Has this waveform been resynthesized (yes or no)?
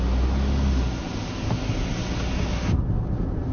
no